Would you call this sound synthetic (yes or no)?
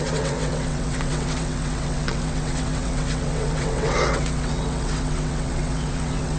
yes